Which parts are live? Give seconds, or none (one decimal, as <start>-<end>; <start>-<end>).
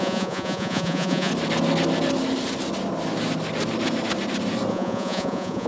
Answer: 1.3-4.7